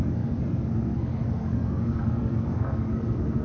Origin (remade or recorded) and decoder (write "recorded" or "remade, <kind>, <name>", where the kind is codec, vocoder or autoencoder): remade, codec, SNAC